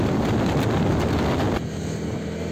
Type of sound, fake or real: real